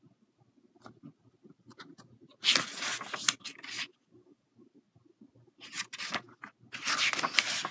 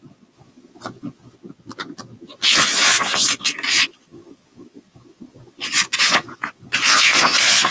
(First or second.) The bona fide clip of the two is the first